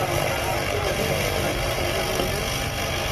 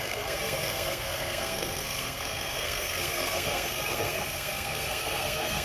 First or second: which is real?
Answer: first